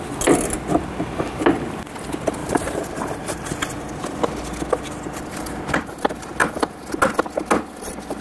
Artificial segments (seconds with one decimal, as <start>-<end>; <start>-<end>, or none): 2.4-3.5